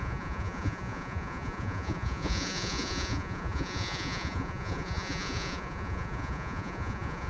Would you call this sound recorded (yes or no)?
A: no